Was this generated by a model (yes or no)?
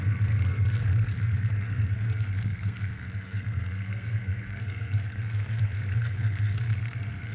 yes